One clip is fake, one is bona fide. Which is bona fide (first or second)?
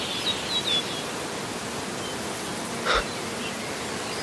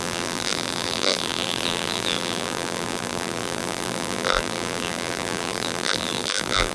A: first